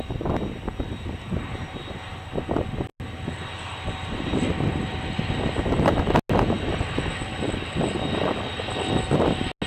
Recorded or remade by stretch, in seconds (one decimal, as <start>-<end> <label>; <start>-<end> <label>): 0.0-9.7 recorded